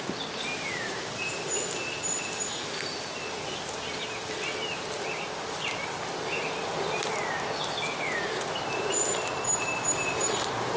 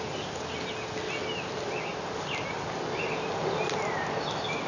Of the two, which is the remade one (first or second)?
first